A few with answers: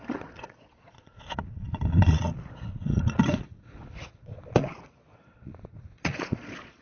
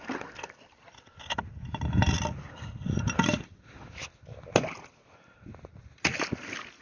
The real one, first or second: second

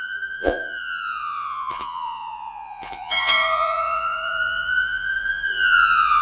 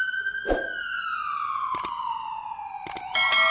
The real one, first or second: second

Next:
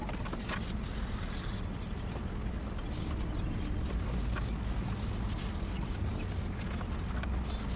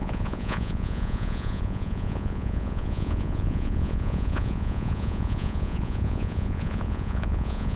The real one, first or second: first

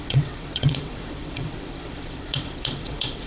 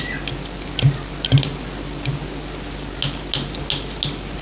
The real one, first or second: second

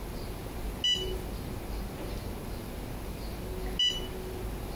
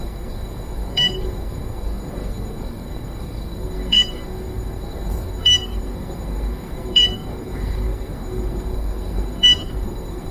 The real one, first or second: first